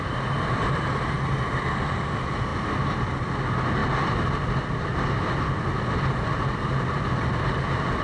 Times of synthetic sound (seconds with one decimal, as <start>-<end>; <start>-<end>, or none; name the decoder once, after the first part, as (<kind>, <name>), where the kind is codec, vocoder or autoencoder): none